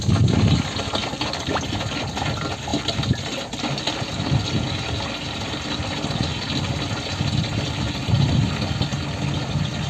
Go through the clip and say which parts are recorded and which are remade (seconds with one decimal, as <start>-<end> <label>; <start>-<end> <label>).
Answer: 0.0-9.9 recorded